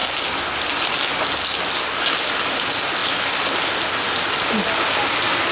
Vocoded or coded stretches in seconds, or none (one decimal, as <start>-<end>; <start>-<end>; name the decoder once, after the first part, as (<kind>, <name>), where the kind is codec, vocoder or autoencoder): none